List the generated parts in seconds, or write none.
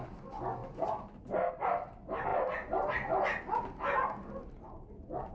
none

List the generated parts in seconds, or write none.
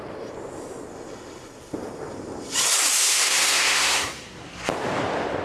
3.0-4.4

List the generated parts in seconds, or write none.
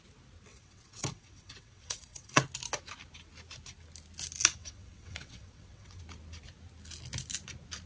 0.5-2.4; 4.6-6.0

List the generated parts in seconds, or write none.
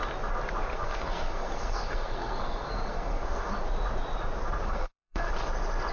0.7-3.5; 4.7-5.3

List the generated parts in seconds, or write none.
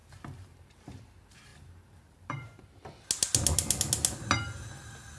0.0-1.0; 1.5-2.6